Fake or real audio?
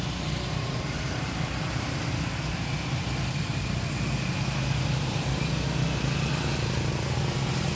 fake